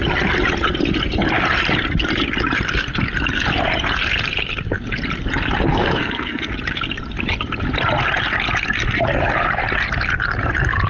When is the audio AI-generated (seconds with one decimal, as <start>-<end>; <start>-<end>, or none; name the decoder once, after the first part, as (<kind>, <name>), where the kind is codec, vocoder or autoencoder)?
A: 5.7-6.5 (codec, SNAC)